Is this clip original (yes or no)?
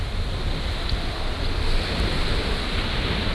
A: yes